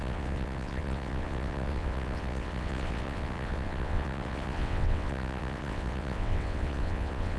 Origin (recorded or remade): remade